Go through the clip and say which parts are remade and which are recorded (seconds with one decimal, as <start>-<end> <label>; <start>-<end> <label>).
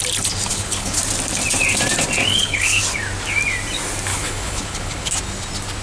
0.0-0.5 recorded; 0.5-1.0 remade; 1.0-2.3 recorded; 2.3-2.8 remade; 2.8-4.1 recorded; 4.1-5.1 remade; 5.1-5.8 recorded